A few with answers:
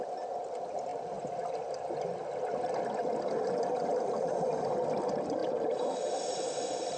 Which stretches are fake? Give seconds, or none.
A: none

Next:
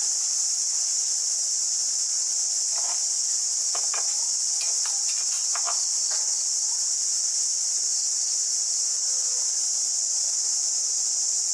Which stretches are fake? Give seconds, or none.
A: none